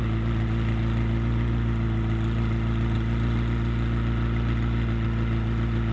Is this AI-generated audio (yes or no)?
no